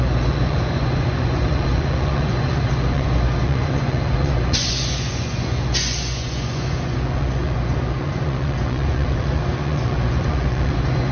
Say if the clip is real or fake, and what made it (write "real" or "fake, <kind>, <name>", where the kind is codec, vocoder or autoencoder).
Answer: fake, vocoder, Vocos